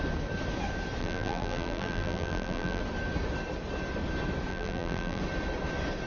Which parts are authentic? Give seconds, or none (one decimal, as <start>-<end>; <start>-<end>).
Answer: 0.0-1.0; 2.8-4.5; 5.2-6.1